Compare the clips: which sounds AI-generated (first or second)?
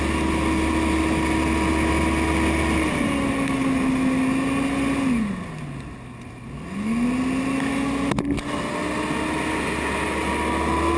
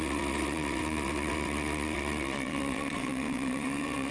second